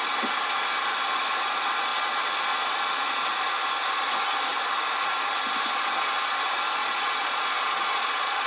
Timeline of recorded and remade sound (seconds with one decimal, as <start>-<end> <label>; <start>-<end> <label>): 0.0-6.8 recorded; 6.8-8.5 remade